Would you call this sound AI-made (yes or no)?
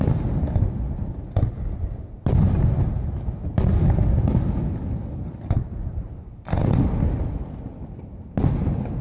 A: no